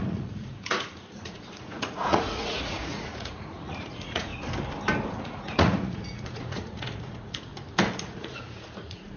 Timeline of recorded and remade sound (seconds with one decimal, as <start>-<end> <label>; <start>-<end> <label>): 0.0-4.3 remade; 4.3-5.1 recorded; 5.1-7.5 remade; 7.5-8.0 recorded; 8.0-9.2 remade